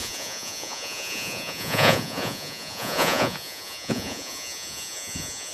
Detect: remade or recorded remade